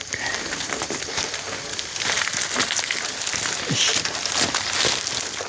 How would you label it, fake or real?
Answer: real